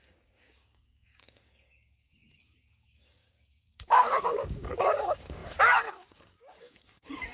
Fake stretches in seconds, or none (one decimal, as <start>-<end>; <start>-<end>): 0.0-7.3

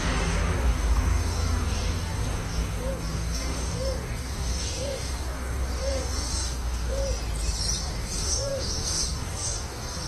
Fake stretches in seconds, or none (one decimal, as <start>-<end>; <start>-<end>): 0.0-7.0; 7.8-10.1

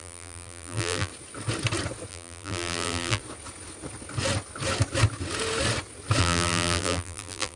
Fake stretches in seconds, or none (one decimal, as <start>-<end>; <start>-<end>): 0.0-1.1; 2.1-3.2; 6.2-7.6

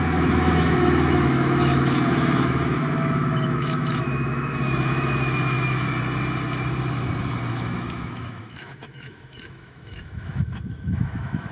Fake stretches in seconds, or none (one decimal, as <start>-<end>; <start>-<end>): 0.0-5.9; 7.5-11.5

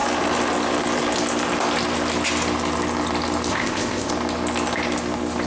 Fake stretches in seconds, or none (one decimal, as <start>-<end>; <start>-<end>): 3.5-4.1

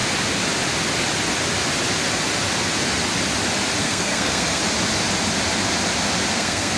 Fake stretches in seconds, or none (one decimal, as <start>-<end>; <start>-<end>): 3.8-4.6; 6.3-6.8

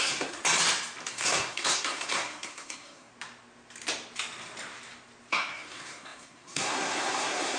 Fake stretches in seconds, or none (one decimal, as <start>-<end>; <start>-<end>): 0.0-0.4; 1.1-3.1; 5.3-7.6

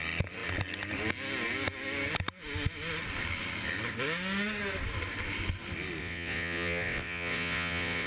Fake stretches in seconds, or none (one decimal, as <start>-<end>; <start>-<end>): 6.0-8.1